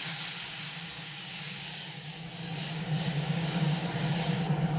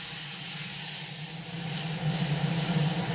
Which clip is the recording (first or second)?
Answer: second